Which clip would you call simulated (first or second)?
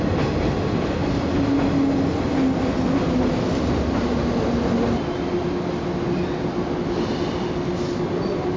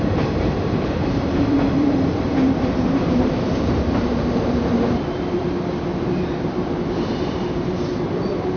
second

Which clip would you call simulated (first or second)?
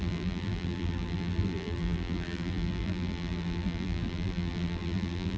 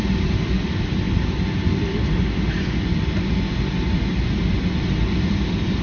first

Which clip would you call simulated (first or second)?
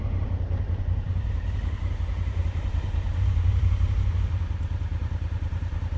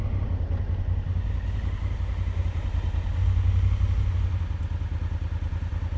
first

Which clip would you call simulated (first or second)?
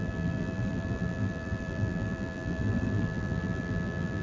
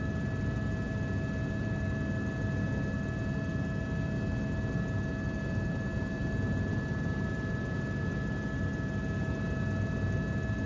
first